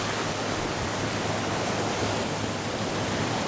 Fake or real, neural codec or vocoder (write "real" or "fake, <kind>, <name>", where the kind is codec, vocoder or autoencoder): real